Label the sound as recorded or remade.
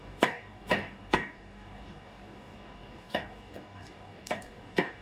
remade